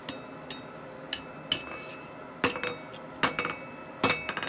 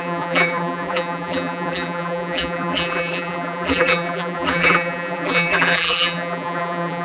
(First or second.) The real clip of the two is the first